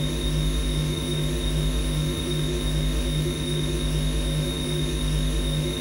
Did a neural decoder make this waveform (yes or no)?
yes